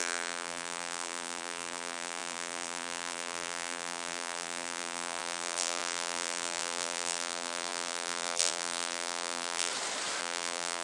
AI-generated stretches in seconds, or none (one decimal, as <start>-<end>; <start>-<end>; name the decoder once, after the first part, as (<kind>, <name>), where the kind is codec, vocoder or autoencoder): 0.0-9.7 (vocoder, BigVGAN v2); 10.2-10.8